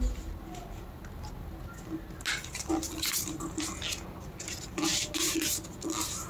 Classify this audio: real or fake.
real